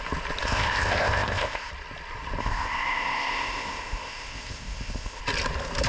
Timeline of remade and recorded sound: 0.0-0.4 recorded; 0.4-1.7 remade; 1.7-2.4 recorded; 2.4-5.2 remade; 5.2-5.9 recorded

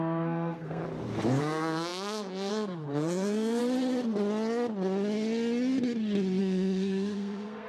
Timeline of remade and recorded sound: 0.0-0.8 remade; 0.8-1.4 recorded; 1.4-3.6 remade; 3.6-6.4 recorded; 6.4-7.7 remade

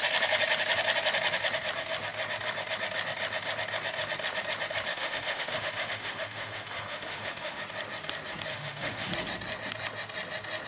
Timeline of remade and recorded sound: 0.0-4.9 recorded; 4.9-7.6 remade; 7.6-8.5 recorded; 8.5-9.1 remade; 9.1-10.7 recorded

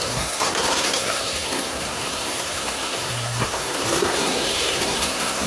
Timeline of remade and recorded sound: 0.0-5.5 remade